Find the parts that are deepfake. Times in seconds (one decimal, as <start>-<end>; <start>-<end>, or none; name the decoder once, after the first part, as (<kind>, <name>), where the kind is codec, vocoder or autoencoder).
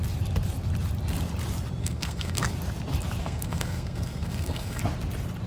1.8-2.5 (codec, SNAC); 3.2-4.8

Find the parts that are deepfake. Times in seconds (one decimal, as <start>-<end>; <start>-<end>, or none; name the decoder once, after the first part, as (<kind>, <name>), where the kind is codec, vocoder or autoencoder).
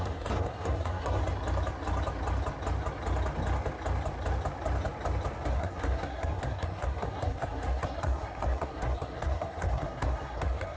0.0-1.2 (codec, SNAC); 5.5-10.8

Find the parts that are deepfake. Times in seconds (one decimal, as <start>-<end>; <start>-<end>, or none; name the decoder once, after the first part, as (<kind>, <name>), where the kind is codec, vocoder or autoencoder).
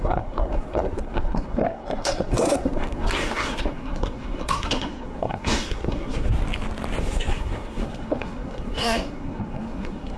0.0-6.4 (codec, SNAC); 7.0-10.2